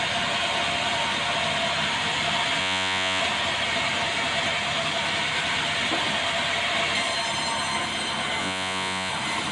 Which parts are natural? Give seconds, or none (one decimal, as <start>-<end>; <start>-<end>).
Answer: 0.0-2.6; 3.2-8.4; 9.1-9.5